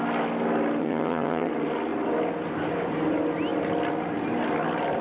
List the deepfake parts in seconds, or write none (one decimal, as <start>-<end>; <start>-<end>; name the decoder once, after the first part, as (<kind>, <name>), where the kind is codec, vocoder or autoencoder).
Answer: 0.8-1.5 (vocoder, HiFi-GAN)